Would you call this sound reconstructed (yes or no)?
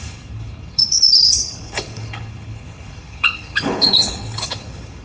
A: yes